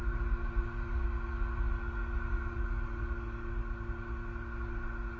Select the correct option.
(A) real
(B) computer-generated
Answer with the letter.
A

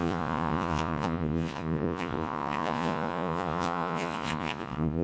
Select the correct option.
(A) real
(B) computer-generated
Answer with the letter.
B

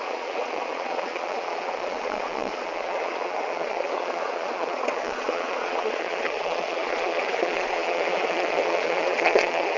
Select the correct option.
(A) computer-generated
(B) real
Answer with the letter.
A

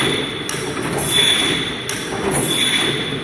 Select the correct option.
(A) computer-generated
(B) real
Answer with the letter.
B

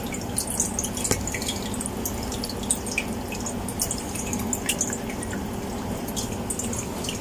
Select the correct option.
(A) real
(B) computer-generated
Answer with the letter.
A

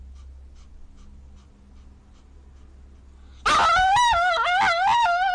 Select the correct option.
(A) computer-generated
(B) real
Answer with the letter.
B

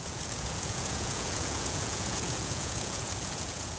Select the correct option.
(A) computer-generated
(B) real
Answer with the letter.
A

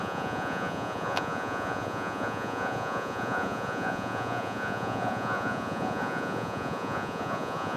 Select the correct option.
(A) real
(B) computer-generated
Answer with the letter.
B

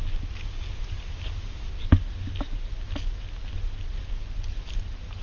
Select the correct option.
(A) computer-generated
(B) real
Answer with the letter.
B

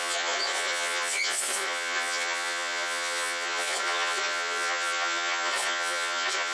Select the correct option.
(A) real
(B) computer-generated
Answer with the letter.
B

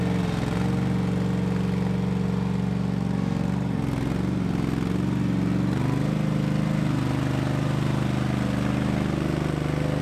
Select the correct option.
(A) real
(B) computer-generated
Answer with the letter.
A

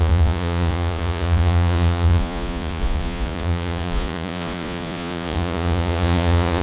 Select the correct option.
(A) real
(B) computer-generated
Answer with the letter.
B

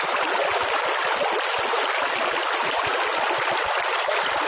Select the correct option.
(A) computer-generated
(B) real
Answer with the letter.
B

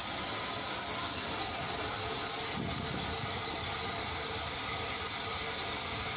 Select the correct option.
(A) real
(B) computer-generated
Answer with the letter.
A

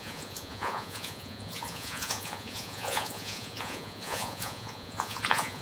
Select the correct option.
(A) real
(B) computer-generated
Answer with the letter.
B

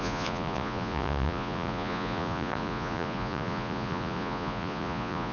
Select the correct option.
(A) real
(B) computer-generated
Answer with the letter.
B